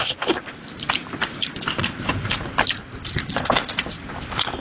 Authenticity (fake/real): fake